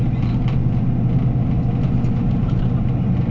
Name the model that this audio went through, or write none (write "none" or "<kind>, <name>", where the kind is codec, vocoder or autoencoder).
none